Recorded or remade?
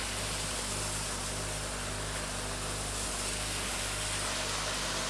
recorded